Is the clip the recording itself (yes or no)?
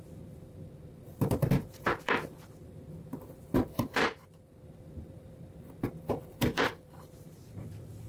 no